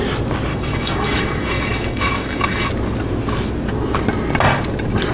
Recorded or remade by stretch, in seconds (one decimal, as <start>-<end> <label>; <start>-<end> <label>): 0.0-0.5 recorded; 0.5-2.7 remade; 2.7-5.1 recorded